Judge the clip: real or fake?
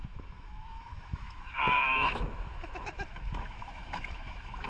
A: fake